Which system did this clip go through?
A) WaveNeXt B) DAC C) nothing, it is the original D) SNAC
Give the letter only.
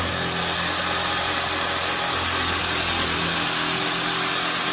C